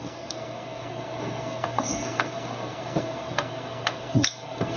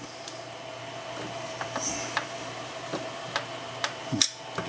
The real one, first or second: second